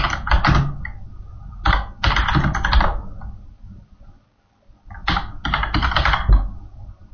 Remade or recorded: recorded